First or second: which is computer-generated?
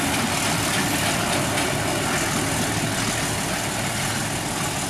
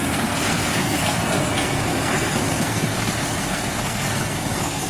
second